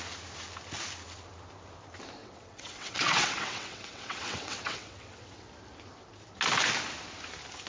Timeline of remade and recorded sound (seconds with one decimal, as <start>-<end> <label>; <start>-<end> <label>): 0.0-2.2 recorded; 2.2-5.5 remade; 5.5-7.7 recorded